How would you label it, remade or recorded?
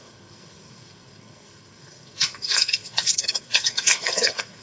remade